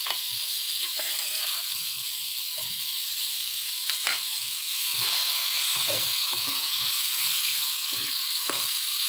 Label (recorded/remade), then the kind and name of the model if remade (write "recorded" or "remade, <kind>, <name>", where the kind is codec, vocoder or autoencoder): remade, codec, SNAC